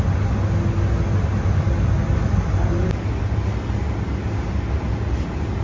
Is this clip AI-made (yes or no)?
no